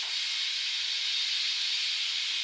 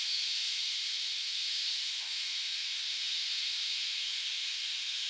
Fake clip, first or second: second